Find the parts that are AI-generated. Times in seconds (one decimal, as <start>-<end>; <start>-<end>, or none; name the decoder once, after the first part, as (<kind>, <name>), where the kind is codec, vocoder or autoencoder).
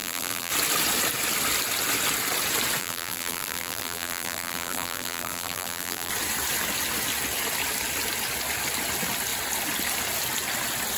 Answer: 0.0-0.5 (vocoder, BigVGAN v2); 2.8-6.1